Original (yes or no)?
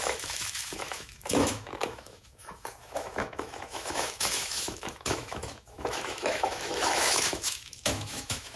no